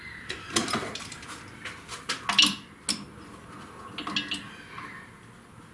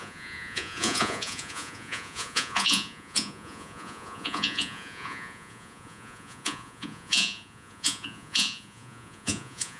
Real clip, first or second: first